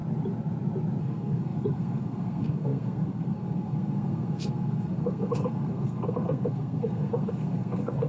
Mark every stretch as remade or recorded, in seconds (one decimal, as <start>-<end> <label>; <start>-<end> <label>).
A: 0.0-1.0 recorded; 1.0-8.1 remade